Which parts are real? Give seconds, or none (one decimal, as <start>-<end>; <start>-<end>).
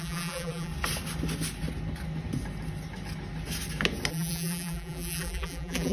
0.7-4.1